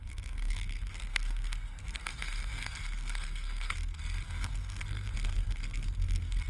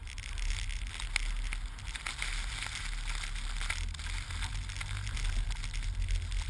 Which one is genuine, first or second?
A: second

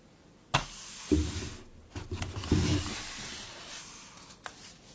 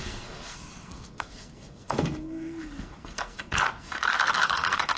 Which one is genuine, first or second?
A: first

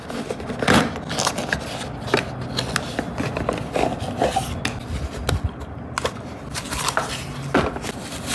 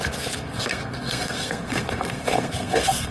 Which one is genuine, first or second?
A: first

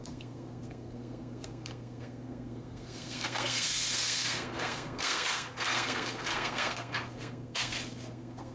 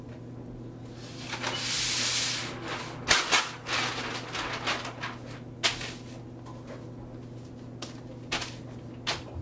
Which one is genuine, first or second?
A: second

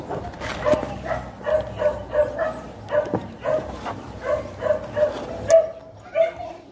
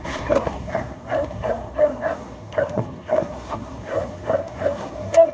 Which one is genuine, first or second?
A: first